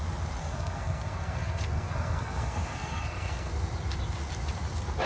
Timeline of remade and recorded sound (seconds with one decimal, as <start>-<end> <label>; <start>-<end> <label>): 0.0-0.4 recorded; 0.4-3.5 remade; 3.5-5.1 recorded